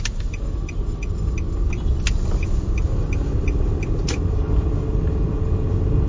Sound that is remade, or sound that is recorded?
recorded